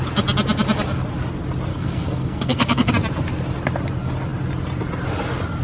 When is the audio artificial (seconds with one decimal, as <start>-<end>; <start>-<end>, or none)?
1.7-2.9